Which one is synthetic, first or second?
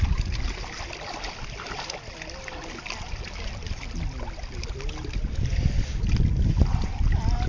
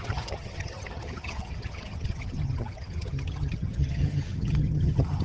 second